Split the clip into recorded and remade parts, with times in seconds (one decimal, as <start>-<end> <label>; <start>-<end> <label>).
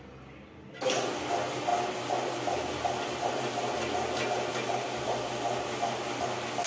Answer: 0.0-6.7 recorded